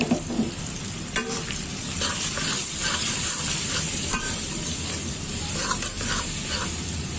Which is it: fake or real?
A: fake